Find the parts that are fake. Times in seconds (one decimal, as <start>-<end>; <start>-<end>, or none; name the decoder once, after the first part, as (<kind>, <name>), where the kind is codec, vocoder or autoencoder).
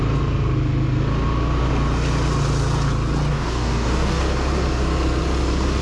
3.3-4.2 (codec, DAC)